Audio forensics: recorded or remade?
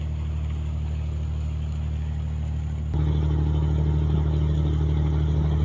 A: recorded